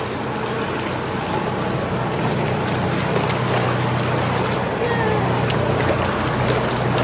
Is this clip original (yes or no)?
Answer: yes